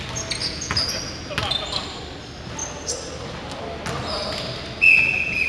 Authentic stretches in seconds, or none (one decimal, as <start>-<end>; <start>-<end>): 0.0-0.4; 0.9-5.5